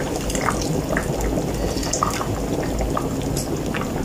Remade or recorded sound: recorded